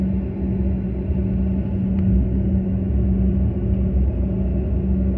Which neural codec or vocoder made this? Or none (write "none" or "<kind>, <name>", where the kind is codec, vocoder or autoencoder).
none